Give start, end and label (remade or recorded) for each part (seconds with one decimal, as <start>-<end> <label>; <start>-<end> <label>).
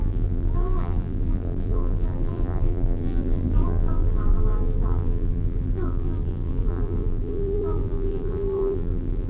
0.0-9.3 remade